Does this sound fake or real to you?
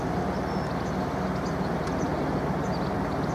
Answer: real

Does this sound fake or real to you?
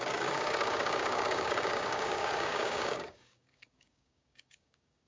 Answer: fake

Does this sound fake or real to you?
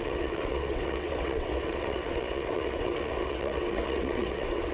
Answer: fake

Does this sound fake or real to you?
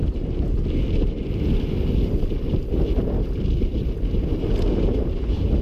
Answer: real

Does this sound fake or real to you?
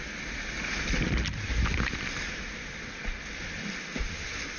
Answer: real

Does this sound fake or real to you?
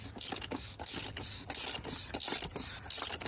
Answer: real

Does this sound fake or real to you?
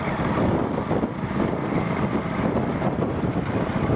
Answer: real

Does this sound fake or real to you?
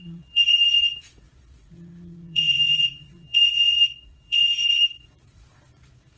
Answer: fake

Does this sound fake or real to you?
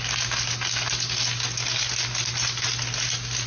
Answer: real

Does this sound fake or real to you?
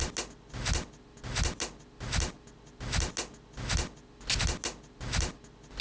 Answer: real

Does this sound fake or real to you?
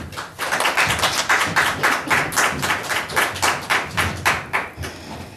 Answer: real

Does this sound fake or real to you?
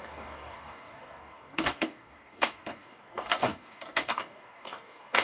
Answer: fake